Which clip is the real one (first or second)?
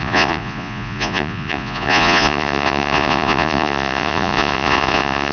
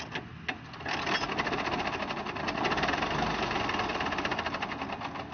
second